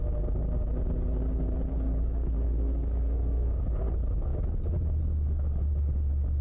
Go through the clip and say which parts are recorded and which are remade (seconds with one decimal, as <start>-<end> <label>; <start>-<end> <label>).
0.0-1.7 recorded; 1.7-3.6 remade; 3.6-6.4 recorded